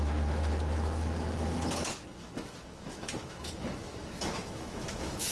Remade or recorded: remade